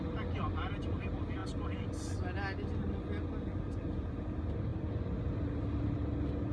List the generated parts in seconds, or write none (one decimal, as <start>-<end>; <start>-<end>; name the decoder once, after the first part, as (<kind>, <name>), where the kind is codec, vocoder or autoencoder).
none